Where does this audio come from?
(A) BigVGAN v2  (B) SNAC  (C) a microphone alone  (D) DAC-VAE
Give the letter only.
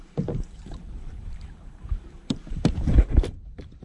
A